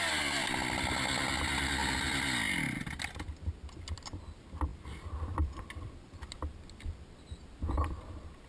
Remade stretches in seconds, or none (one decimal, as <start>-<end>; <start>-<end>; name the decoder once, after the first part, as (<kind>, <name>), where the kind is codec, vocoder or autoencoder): none

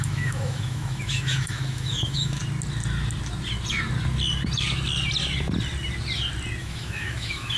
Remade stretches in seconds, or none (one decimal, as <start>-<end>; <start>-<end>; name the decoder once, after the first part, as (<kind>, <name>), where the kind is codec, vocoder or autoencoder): 0.0-2.4 (autoencoder, DAC-VAE); 6.6-7.6

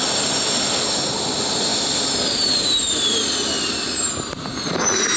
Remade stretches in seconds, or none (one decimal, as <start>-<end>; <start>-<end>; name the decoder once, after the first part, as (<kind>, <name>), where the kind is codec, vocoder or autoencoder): none

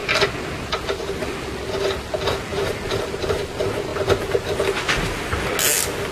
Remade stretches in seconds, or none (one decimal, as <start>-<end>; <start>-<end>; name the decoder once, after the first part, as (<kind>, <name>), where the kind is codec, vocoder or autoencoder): 2.5-3.2 (vocoder, BigVGAN v2)

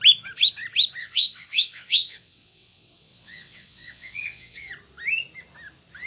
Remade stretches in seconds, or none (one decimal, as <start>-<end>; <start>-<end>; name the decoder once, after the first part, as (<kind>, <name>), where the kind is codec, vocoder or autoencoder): 1.0-4.7 (vocoder, WaveNeXt)

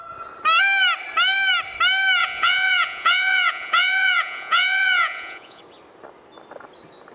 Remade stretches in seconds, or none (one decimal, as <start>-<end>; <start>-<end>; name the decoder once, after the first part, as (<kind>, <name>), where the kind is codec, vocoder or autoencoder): 2.2-5.6 (vocoder, Vocos)